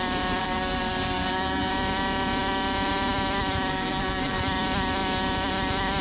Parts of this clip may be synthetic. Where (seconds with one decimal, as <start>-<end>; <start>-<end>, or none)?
0.4-1.7; 3.7-4.4